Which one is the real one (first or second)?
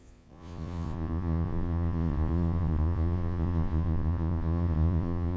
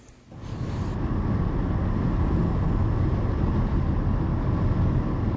second